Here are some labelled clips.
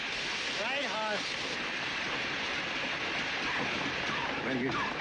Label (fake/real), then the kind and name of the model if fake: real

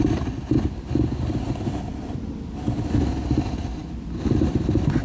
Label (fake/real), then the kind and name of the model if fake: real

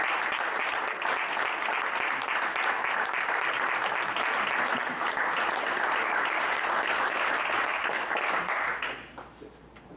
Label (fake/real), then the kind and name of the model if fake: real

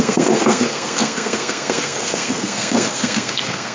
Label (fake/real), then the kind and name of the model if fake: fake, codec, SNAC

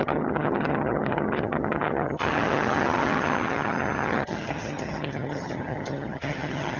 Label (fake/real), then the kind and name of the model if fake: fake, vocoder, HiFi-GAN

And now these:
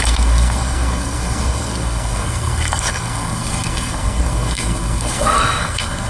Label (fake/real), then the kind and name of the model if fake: fake, codec, SNAC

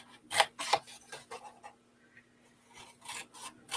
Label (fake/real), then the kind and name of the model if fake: real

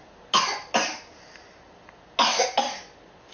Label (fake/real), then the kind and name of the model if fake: real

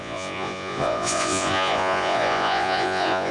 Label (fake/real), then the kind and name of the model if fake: fake, vocoder, Vocos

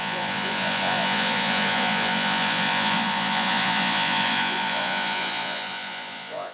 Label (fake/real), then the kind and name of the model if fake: fake, vocoder, Vocos